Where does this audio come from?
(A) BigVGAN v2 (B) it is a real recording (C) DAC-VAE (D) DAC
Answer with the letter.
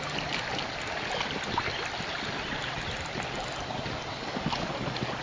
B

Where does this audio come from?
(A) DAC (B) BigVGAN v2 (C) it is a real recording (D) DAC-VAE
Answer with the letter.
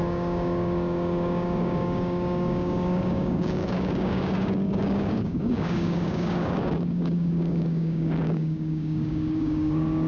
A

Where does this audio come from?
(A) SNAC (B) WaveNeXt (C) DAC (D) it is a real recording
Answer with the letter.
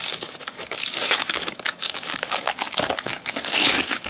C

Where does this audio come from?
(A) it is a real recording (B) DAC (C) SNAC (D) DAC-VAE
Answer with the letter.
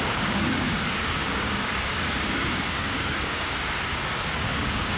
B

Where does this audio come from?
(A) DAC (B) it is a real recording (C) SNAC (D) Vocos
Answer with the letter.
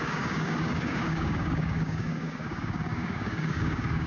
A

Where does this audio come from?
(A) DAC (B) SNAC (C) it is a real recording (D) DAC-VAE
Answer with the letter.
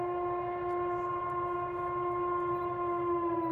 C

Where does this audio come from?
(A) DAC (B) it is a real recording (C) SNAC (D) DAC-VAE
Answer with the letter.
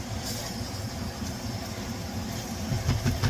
B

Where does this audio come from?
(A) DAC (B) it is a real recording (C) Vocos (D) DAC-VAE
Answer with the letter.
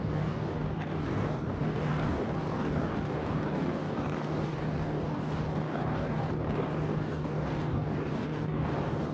A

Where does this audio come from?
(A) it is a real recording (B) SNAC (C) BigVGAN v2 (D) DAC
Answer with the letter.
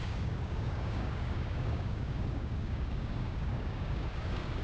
D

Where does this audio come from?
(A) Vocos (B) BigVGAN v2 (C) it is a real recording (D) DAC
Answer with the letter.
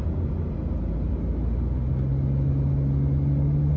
C